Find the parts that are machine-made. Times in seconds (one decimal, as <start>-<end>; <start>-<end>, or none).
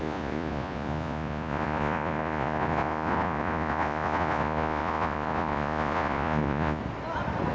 0.0-6.8